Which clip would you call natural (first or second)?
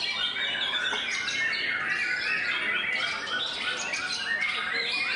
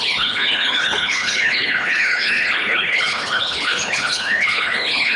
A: first